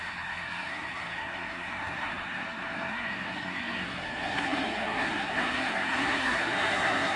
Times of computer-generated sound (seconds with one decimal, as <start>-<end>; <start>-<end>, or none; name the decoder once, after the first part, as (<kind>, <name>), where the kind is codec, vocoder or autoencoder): 0.0-7.2 (codec, SNAC)